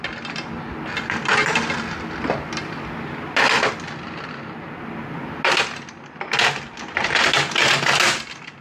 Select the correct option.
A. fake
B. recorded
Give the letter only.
B